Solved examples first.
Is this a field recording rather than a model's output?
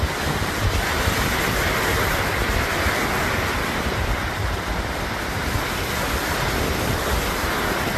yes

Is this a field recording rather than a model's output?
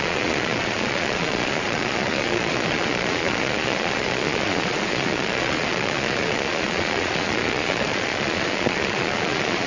no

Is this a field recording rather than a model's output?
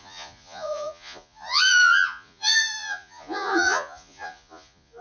no